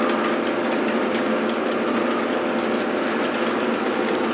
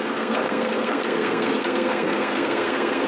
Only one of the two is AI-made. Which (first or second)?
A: second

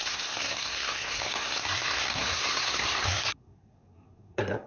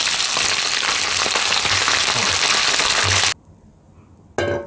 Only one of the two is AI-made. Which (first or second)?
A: first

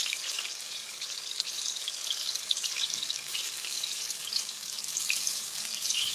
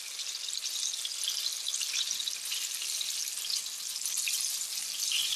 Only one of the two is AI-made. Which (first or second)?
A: first